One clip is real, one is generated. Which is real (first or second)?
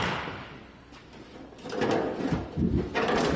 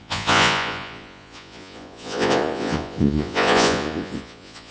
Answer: first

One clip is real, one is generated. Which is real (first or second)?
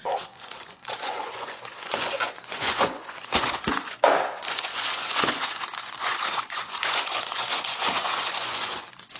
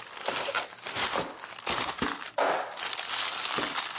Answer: second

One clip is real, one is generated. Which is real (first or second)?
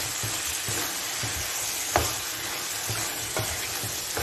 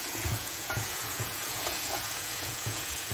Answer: first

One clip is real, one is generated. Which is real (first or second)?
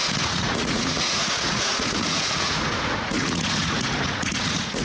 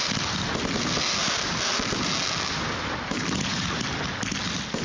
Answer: second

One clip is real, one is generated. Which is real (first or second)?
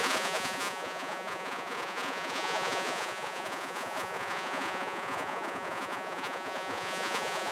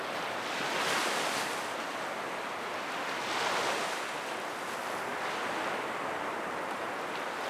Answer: second